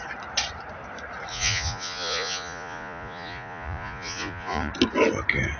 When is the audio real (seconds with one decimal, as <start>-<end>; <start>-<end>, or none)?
0.0-1.3; 4.7-5.6